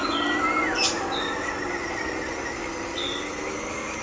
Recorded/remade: recorded